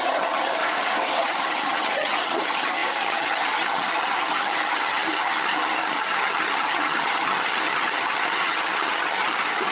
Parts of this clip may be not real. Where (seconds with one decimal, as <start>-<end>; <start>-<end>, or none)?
0.0-0.6; 1.2-9.7